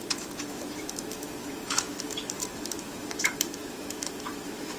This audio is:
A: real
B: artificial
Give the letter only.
B